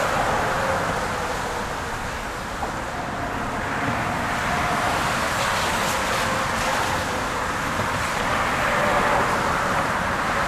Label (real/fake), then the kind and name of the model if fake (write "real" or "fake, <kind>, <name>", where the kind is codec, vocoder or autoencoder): real